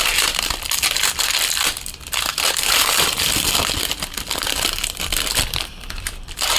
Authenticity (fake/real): fake